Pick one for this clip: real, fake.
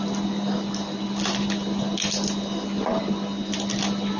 real